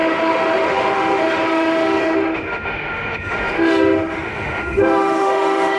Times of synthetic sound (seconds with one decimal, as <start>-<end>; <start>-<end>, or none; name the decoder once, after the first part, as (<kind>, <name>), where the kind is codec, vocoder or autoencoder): 0.0-5.8 (autoencoder, DAC-VAE)